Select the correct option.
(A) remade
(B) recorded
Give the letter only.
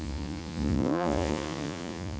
A